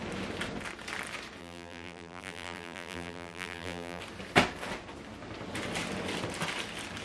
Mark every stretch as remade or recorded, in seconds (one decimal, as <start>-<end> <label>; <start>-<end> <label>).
0.0-1.4 recorded; 1.4-4.0 remade; 4.0-7.0 recorded